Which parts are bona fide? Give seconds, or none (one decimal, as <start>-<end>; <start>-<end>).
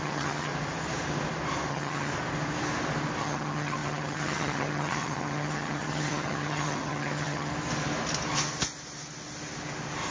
0.5-1.7; 2.1-3.2; 7.5-10.1